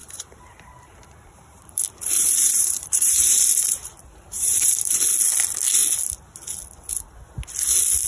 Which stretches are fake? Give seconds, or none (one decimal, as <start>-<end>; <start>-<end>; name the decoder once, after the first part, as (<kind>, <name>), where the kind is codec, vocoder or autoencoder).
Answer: 0.0-4.9 (vocoder, BigVGAN v2)